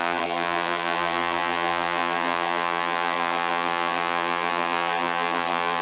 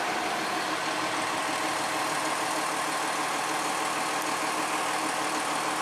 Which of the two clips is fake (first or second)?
first